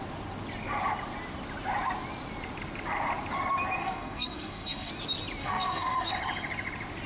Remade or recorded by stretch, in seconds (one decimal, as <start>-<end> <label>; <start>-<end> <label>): 0.0-3.8 recorded; 3.8-4.9 remade; 4.9-5.4 recorded; 5.4-6.1 remade; 6.1-7.1 recorded